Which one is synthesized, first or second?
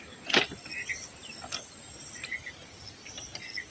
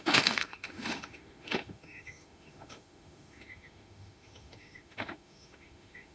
second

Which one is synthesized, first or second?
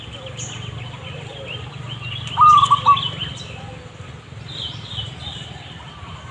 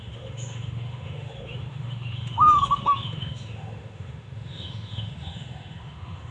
second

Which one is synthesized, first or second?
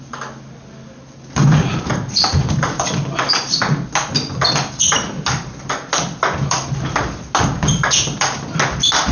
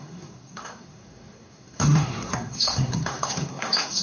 second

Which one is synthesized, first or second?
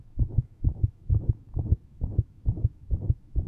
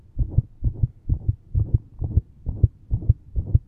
first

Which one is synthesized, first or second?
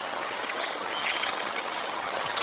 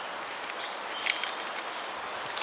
first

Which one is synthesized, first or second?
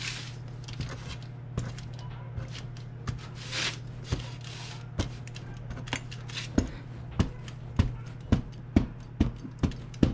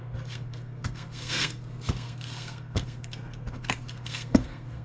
second